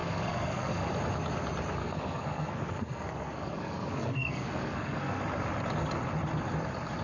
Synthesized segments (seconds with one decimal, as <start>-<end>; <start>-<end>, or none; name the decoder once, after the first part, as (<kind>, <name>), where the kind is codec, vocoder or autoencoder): 0.0-0.9 (codec, SNAC); 1.8-5.2